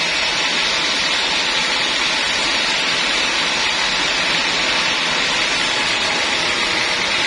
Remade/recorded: recorded